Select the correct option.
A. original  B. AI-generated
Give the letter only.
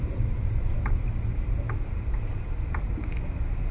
B